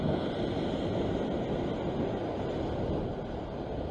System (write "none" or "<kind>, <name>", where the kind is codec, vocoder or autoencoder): none